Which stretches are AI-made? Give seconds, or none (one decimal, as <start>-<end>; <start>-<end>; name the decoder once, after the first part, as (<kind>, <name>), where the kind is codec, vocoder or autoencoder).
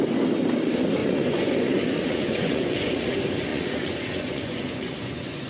1.0-3.1 (vocoder, Vocos); 3.5-5.5